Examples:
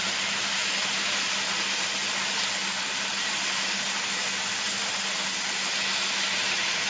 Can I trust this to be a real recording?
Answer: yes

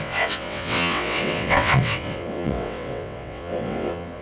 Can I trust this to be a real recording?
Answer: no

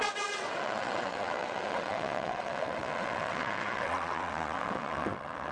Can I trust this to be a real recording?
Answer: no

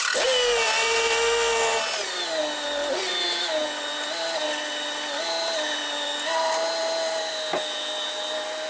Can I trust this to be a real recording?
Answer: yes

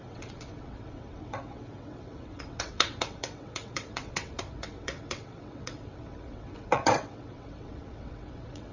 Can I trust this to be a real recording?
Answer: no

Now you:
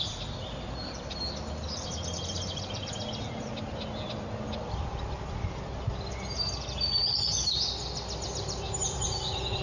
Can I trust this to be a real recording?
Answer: yes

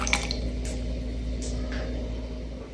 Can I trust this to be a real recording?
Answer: yes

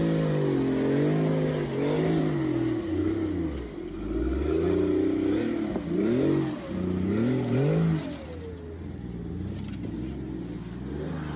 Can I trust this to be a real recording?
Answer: yes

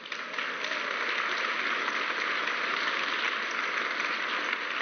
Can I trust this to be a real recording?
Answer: yes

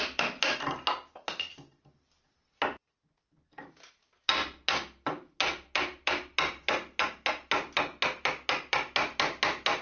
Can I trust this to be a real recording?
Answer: yes